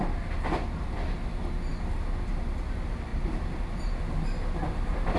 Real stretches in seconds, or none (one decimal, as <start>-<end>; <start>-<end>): 0.0-3.1; 3.9-5.2